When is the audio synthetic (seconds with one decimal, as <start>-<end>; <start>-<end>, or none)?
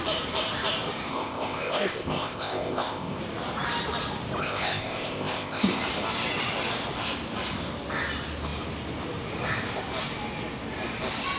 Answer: 1.1-3.2; 4.4-5.8